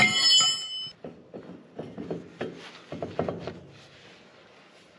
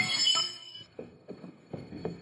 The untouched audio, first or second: first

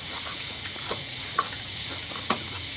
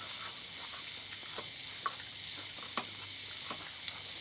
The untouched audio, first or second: second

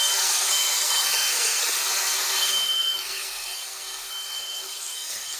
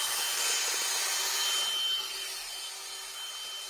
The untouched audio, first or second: second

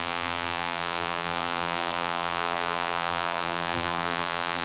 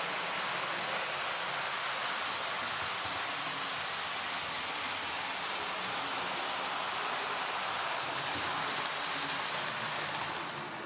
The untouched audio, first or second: second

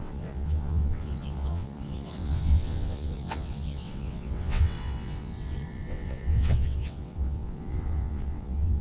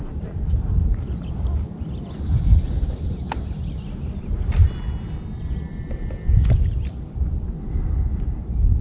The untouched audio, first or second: second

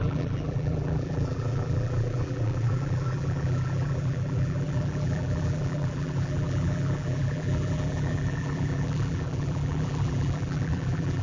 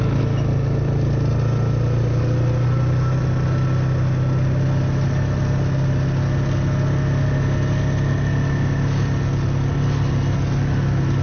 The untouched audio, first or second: second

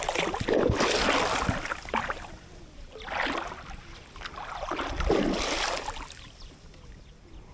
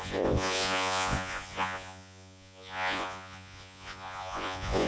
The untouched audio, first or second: first